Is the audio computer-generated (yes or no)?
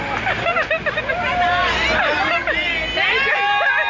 no